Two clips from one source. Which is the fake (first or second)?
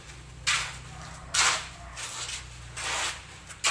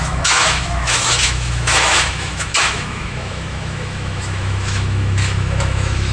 second